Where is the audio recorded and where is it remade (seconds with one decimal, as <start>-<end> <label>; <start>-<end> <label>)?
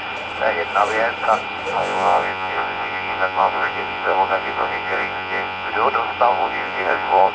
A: 0.0-1.8 recorded; 1.8-5.7 remade; 5.7-6.3 recorded; 6.3-7.3 remade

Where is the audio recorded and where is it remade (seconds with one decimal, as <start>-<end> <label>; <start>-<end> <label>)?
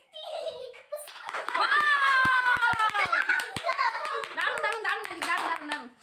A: 0.0-4.2 remade; 4.2-4.7 recorded; 4.7-6.0 remade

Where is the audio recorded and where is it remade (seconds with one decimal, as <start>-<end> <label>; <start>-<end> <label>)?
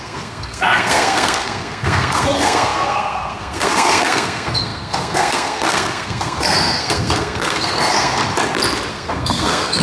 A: 0.0-8.2 remade; 8.2-8.9 recorded; 8.9-9.8 remade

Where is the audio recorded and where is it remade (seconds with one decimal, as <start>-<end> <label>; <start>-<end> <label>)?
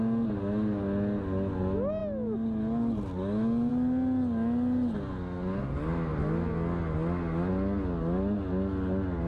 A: 0.0-9.3 recorded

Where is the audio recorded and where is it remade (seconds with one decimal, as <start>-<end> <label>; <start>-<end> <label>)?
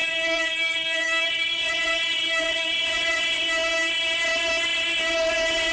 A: 0.0-3.4 remade; 3.4-5.7 recorded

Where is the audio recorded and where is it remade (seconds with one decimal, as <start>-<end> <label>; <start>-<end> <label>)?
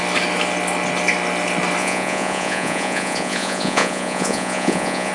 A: 0.0-1.8 recorded; 1.8-5.1 remade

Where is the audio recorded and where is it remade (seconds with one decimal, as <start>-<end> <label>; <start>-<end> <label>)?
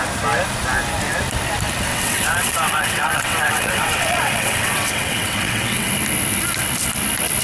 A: 0.0-1.9 recorded; 1.9-5.9 remade; 5.9-7.4 recorded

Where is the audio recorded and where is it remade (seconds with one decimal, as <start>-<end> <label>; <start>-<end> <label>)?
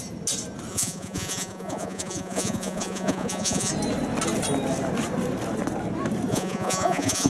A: 0.0-0.7 recorded; 0.7-3.7 remade; 3.7-6.3 recorded; 6.3-7.3 remade